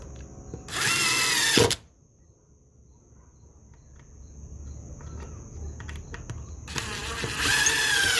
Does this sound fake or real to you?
real